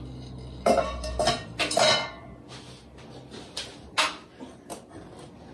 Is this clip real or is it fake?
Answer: real